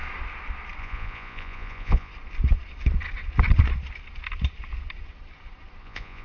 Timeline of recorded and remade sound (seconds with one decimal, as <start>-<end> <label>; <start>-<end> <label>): 0.0-0.8 recorded; 0.8-2.1 remade; 2.1-5.8 recorded; 5.8-6.2 remade

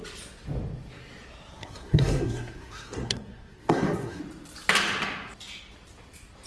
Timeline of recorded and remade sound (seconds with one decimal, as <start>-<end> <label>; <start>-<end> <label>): 0.0-1.6 recorded; 1.6-4.2 remade; 4.2-6.5 recorded

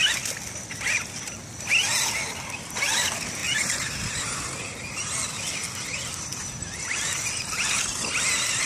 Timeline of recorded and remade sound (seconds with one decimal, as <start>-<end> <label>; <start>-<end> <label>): 0.0-8.7 recorded

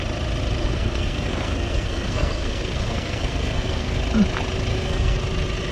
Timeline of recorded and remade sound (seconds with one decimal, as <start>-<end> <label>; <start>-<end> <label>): 0.0-0.6 recorded; 0.6-4.0 remade; 4.0-4.7 recorded; 4.7-5.2 remade; 5.2-5.7 recorded

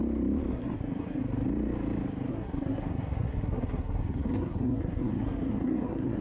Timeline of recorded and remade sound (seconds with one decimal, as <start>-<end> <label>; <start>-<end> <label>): 0.0-0.5 recorded; 0.5-1.2 remade; 1.2-2.3 recorded; 2.3-6.2 remade

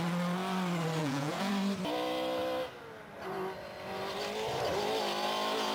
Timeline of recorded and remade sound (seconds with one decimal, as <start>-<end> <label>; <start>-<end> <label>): 0.0-1.0 recorded; 1.0-1.5 remade; 1.5-5.7 recorded

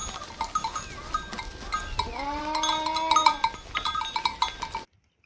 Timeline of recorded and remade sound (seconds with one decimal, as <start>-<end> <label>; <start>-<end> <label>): 0.0-3.2 recorded; 3.2-4.2 remade; 4.2-5.3 recorded